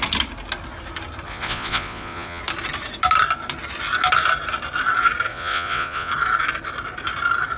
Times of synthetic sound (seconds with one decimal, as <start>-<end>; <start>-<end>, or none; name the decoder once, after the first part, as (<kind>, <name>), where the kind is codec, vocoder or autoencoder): 1.3-2.4 (vocoder, Vocos); 5.3-6.1